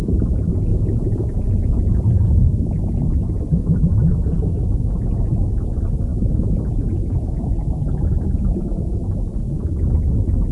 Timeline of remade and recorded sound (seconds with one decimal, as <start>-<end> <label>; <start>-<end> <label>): 0.0-0.7 recorded; 0.7-2.4 remade; 2.4-4.0 recorded; 4.0-5.6 remade; 5.6-6.1 recorded; 6.1-7.7 remade; 7.7-10.5 recorded

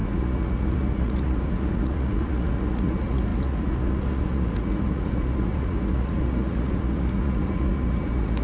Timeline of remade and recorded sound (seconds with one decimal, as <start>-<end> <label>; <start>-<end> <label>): 0.0-8.4 remade

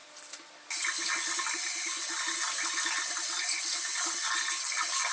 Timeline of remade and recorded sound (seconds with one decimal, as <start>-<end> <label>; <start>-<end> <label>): 0.0-5.1 recorded